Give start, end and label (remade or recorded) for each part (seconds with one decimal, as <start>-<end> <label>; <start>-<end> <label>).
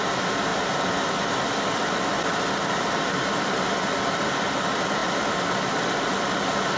0.0-6.8 recorded